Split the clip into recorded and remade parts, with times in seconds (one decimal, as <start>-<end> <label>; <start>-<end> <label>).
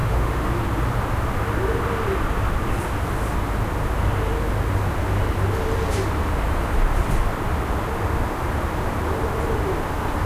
0.0-0.5 remade; 0.5-10.3 recorded